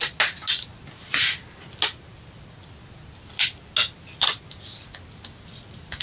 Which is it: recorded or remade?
recorded